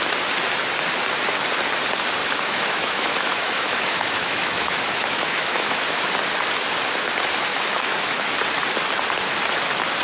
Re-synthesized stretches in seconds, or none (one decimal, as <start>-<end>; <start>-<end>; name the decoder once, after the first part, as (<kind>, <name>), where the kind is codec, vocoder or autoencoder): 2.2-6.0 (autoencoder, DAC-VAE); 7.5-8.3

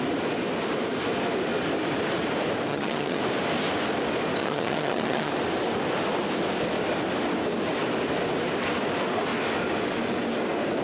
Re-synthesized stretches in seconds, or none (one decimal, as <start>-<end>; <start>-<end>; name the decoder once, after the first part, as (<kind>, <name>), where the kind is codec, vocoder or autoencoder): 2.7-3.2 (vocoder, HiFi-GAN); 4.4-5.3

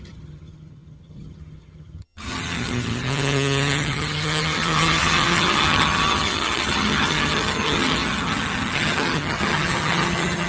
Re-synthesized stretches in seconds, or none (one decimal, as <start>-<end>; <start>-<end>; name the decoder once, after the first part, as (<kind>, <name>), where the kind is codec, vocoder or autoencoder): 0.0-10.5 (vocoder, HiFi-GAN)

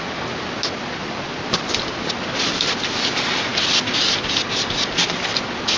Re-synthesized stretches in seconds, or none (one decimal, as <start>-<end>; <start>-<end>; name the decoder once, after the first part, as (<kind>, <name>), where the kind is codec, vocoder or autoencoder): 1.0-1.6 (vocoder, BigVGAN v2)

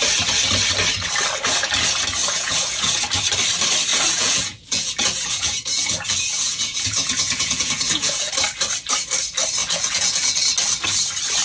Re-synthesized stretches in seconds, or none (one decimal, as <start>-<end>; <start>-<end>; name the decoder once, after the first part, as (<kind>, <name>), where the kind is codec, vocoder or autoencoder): 2.2-3.0 (vocoder, Vocos); 3.9-8.3; 9.6-10.4

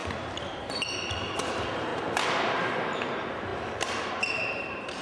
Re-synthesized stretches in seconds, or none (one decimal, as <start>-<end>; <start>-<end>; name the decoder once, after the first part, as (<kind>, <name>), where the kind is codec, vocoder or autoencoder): 1.3-1.9 (vocoder, BigVGAN v2); 2.7-5.0

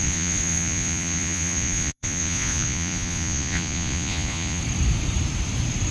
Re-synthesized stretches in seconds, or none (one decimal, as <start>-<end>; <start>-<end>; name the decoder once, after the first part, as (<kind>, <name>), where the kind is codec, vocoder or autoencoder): 0.0-4.6 (vocoder, Vocos)

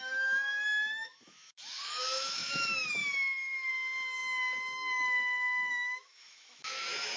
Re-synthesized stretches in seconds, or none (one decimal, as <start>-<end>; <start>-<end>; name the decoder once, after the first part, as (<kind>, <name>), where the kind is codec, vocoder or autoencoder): 0.0-3.0 (autoencoder, DAC-VAE); 3.7-7.2